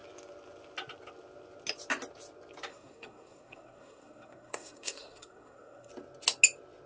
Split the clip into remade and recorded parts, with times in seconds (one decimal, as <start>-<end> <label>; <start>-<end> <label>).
0.0-2.7 recorded; 2.7-5.9 remade; 5.9-6.9 recorded